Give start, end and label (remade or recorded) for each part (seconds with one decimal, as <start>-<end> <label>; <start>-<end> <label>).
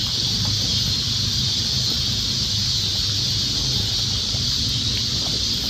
0.0-5.7 recorded